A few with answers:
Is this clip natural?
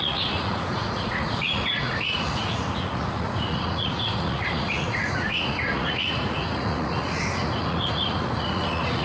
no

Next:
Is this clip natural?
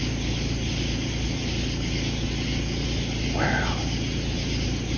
yes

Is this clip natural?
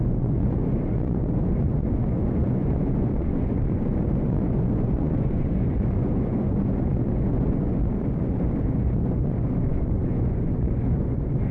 no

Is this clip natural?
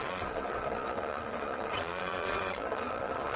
no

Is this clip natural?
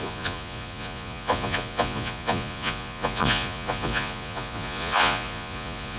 no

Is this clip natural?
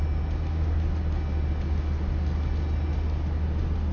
yes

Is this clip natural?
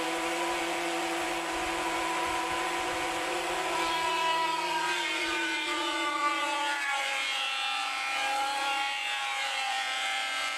no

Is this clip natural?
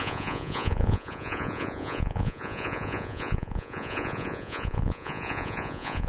no